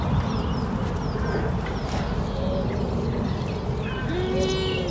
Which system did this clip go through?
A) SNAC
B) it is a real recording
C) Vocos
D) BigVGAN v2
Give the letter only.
B